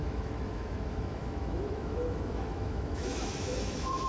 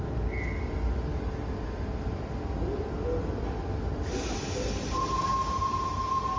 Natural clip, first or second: second